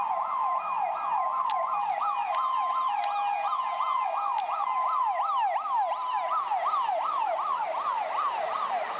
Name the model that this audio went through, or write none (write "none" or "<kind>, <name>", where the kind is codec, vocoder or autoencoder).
none